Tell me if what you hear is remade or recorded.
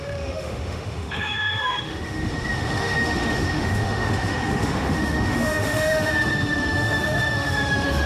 remade